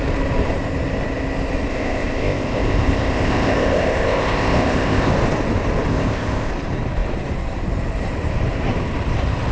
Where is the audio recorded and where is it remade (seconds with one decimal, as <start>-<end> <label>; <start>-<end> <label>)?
0.0-1.7 recorded; 1.7-5.1 remade; 5.1-5.9 recorded; 5.9-6.5 remade; 6.5-9.5 recorded

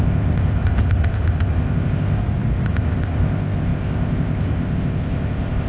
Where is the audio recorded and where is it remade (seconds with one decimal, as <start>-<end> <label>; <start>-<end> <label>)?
0.0-2.2 remade; 2.2-2.7 recorded; 2.7-5.7 remade

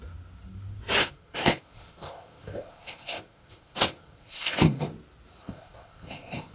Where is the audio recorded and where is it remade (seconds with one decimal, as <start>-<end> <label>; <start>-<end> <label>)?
0.0-1.0 recorded; 1.0-4.9 remade; 4.9-5.4 recorded; 5.4-6.5 remade

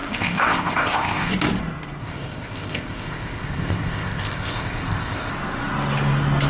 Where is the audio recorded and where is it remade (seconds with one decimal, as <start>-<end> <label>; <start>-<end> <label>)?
0.0-1.3 remade; 1.3-2.0 recorded; 2.0-5.3 remade; 5.3-6.5 recorded

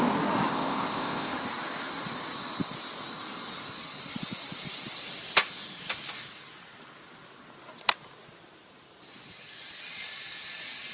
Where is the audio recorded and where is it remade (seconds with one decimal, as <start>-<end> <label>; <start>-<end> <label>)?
0.0-0.5 recorded; 0.5-1.3 remade; 1.3-10.9 recorded

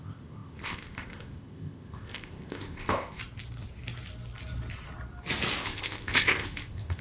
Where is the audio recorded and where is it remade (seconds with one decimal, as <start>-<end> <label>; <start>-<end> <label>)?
0.0-3.2 remade; 3.2-5.6 recorded; 5.6-7.0 remade

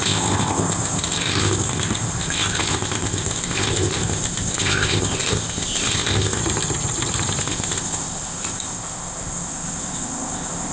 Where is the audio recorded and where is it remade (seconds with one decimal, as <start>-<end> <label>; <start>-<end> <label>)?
0.0-6.4 remade; 6.4-7.4 recorded; 7.4-10.7 remade